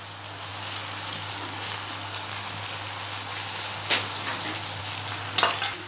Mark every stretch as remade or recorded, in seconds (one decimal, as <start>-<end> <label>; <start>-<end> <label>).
0.0-5.9 recorded